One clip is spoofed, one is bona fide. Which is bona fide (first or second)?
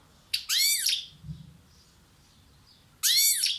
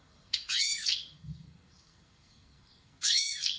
first